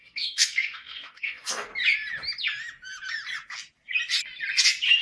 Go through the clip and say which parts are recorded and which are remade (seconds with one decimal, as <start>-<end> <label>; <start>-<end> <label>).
0.0-1.7 remade; 1.7-5.0 recorded